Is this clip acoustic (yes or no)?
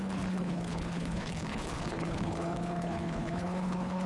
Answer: no